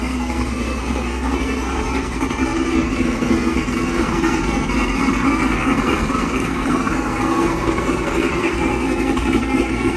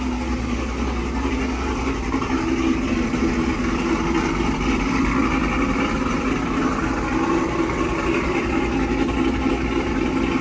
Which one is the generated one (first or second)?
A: first